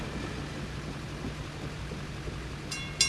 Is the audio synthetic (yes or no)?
no